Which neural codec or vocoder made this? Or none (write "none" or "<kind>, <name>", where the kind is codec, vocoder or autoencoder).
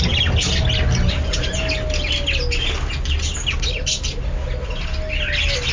none